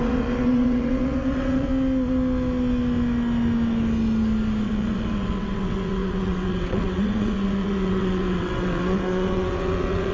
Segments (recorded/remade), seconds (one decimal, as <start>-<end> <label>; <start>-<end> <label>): 0.0-1.7 remade; 1.7-4.6 recorded; 4.6-10.1 remade